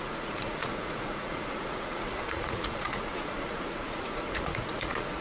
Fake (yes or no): yes